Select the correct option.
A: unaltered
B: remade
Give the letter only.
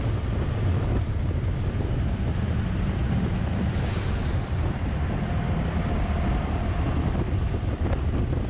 B